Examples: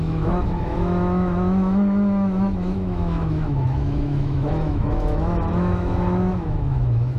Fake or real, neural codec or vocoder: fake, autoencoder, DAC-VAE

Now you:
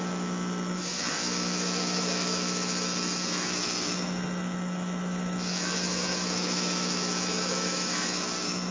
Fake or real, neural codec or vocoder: fake, autoencoder, DAC-VAE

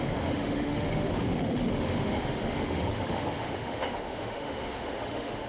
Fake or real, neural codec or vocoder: fake, autoencoder, DAC-VAE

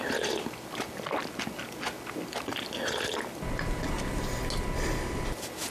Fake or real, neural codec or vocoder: real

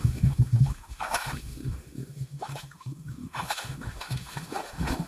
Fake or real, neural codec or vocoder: fake, autoencoder, DAC-VAE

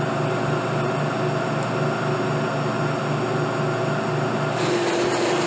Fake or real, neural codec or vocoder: real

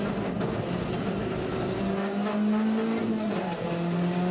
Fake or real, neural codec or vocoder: real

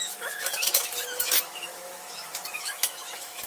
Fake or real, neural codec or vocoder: fake, autoencoder, DAC-VAE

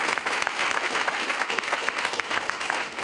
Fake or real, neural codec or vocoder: fake, autoencoder, DAC-VAE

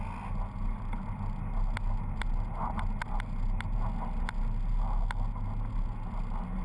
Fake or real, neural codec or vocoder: real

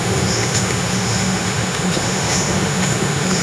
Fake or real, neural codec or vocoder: fake, autoencoder, DAC-VAE